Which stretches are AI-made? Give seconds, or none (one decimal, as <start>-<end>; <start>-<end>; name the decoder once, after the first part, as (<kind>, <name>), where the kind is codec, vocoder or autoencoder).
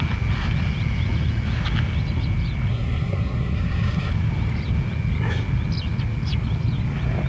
2.7-4.1 (codec, SNAC)